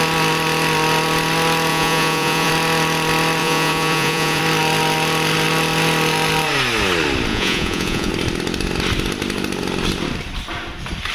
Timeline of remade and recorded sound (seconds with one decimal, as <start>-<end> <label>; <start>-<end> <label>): 0.0-1.7 recorded; 1.7-2.5 remade; 2.5-3.4 recorded; 3.4-4.4 remade; 4.4-7.3 recorded; 7.3-8.1 remade; 8.1-11.1 recorded